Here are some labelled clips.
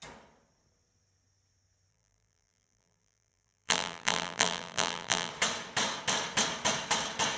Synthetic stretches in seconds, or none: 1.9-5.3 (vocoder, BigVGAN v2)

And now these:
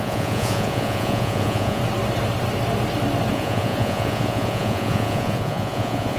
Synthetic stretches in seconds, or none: 0.0-1.8 (vocoder, Vocos); 3.3-6.2

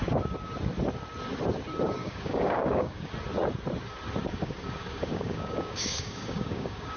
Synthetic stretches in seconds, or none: 2.0-3.1 (codec, DAC); 4.3-7.0

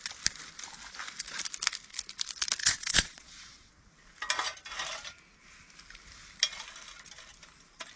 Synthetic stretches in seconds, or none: 2.6-3.7 (vocoder, WaveNeXt)